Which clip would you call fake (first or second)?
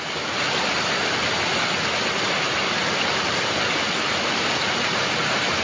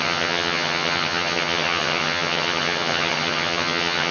second